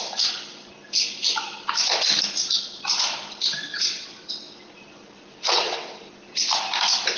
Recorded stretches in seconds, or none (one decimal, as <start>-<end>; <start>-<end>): 0.0-3.7; 4.3-5.3; 6.1-7.2